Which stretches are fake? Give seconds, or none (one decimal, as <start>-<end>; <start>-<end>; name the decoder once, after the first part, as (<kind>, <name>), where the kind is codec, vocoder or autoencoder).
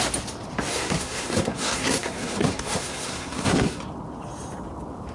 0.7-3.8 (codec, SNAC)